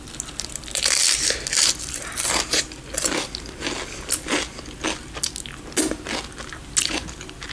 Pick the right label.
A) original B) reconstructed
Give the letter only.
A